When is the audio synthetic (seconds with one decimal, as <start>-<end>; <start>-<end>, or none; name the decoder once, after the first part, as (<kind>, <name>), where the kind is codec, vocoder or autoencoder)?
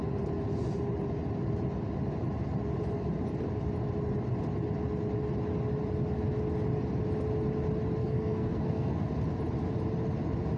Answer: 8.0-9.1 (codec, SNAC)